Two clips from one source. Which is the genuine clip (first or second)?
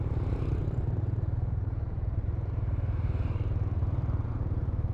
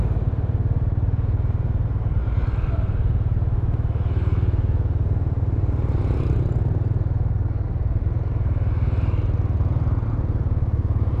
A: second